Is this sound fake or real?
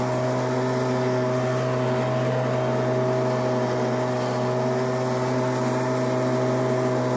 real